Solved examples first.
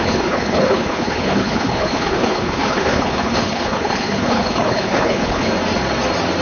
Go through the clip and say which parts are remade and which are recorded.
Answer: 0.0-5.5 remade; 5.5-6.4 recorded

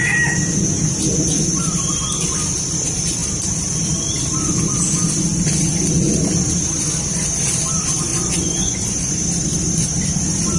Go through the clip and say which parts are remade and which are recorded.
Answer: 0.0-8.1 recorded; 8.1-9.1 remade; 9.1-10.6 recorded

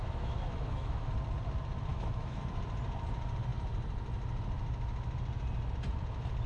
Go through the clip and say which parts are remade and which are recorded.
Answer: 0.0-1.1 remade; 1.1-1.9 recorded; 1.9-2.4 remade; 2.4-6.5 recorded